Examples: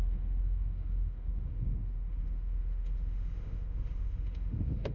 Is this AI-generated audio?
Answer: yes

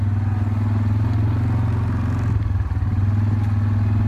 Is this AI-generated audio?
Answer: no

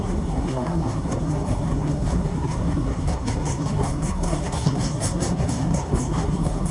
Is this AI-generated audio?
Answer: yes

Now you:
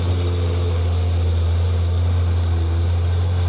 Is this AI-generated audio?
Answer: no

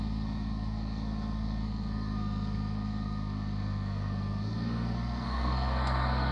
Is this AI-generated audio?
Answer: yes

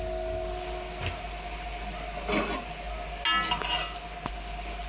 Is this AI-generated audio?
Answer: no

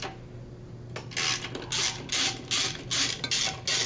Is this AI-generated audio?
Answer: no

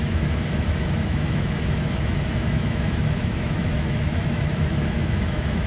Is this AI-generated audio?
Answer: yes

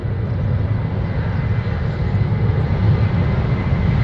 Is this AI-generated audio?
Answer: no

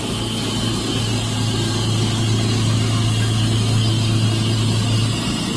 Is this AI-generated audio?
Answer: no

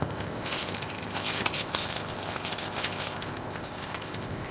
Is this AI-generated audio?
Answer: yes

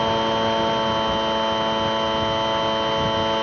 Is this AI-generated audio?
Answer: no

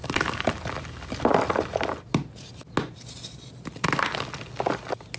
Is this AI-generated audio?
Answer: no